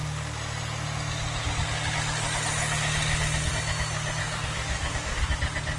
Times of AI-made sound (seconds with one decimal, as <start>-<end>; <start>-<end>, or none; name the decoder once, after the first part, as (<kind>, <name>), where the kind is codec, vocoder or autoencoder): 4.2-5.3 (codec, DAC)